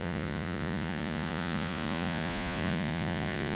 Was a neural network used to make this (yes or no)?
yes